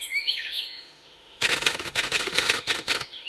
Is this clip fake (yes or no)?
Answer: yes